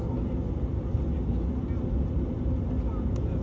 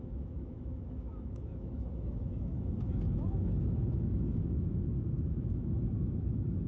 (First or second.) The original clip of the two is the first